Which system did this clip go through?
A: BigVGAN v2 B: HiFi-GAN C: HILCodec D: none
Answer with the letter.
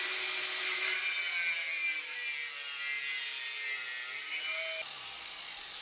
D